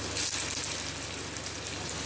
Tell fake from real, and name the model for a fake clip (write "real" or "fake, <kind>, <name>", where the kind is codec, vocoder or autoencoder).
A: real